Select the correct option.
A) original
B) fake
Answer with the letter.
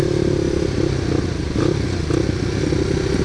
A